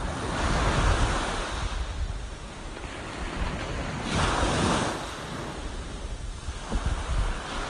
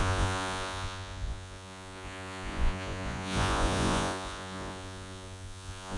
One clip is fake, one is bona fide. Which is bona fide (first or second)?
first